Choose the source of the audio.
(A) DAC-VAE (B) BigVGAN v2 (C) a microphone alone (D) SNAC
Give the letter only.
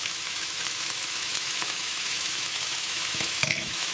A